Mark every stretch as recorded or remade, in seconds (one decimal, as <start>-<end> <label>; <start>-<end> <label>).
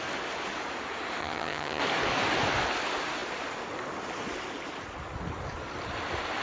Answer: 0.0-1.2 recorded; 1.2-1.8 remade; 1.8-6.4 recorded